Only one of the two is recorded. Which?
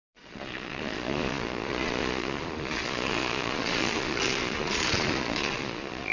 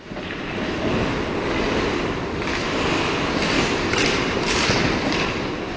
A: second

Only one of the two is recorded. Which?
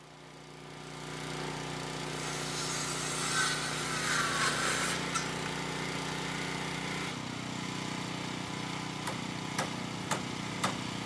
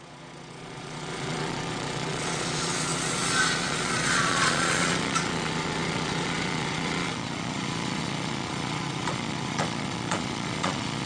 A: first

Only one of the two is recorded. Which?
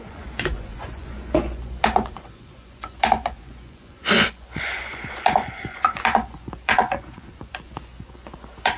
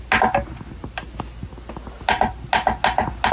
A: second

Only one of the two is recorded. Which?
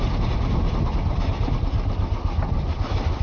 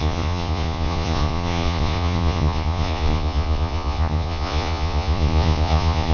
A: first